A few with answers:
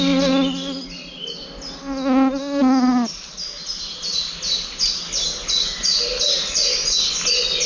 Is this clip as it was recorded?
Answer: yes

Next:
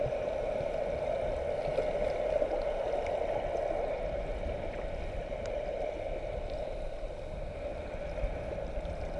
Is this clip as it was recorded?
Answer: yes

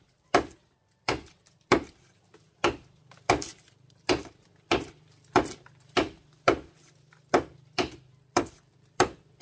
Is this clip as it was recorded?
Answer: no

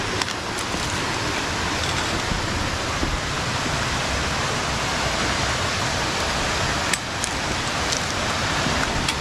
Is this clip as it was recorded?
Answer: yes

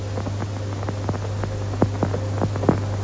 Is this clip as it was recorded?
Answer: yes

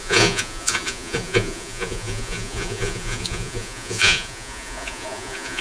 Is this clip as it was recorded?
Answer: no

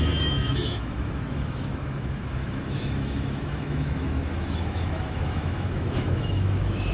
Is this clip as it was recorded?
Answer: no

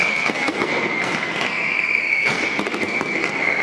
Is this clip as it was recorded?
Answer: no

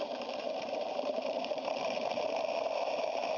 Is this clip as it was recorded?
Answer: no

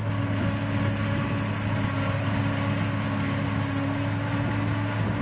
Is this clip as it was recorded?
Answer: yes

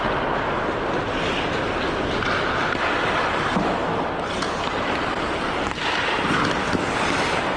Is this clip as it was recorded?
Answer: yes